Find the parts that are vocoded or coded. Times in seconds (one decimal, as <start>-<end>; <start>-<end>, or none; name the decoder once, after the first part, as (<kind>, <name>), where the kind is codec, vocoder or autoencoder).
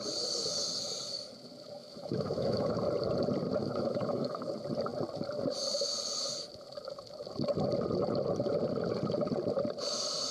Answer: 1.8-2.7 (autoencoder, DAC-VAE); 3.6-4.5